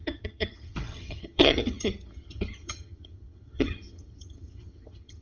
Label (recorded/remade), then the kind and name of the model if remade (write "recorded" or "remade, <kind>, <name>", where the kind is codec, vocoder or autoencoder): remade, vocoder, HiFi-GAN